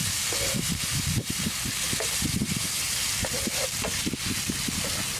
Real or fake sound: real